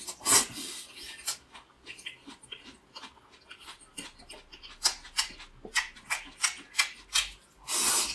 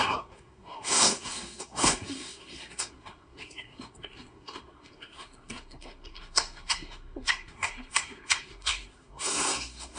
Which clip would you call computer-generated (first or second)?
second